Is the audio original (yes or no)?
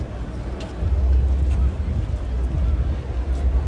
yes